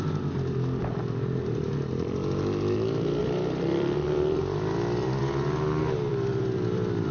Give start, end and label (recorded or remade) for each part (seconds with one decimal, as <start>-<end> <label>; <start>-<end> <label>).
0.0-3.2 recorded; 3.2-5.2 remade; 5.2-6.1 recorded; 6.1-7.1 remade